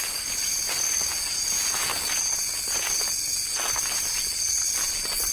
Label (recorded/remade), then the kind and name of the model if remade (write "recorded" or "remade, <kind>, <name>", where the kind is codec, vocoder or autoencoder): recorded